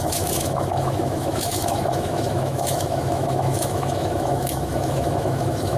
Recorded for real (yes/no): no